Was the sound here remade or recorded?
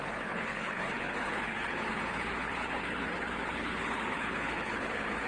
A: remade